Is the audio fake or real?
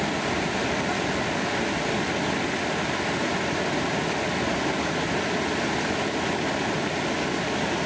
real